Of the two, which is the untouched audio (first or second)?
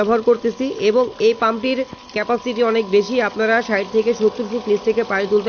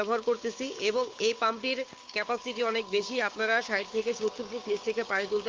first